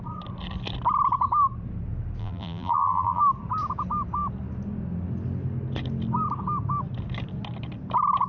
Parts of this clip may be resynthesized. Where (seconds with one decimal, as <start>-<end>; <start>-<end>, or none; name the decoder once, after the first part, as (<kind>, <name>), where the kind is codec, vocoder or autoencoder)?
2.2-3.2 (vocoder, BigVGAN v2)